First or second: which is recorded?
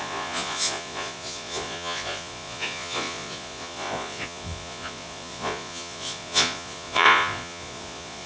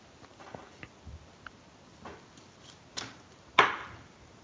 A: second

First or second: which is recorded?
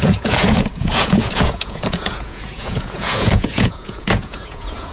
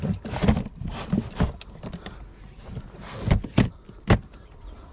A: second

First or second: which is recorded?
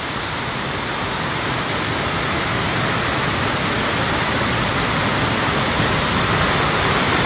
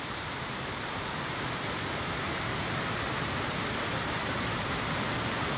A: first